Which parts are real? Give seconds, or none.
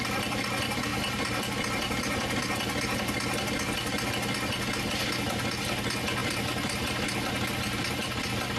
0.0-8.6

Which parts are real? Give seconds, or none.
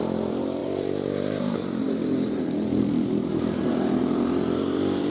none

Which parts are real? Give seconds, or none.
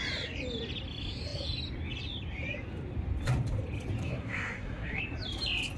0.0-4.0; 5.0-5.8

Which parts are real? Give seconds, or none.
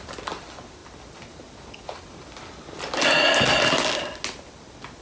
0.0-5.0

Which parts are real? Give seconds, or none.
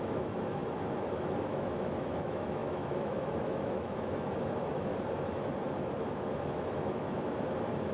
4.9-6.0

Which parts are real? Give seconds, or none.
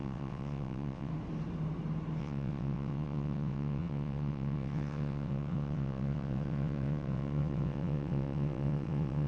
1.1-2.2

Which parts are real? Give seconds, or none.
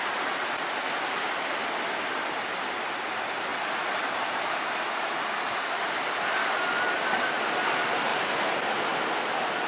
0.0-3.5; 6.8-8.1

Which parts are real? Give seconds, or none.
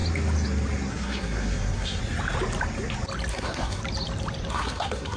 0.0-0.9; 2.0-3.3; 3.8-4.5